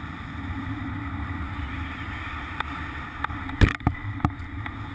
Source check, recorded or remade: remade